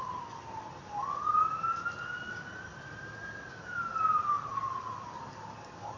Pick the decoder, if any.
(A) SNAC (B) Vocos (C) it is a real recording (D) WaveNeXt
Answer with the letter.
C